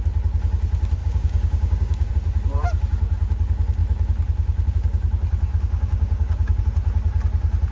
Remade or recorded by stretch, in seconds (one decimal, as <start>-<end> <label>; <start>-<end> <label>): 0.0-1.0 recorded; 1.0-2.1 remade; 2.1-5.5 recorded; 5.5-6.6 remade; 6.6-7.7 recorded